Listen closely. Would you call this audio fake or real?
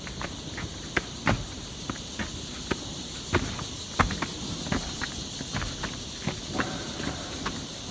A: real